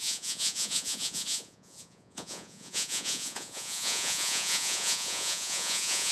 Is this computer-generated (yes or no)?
yes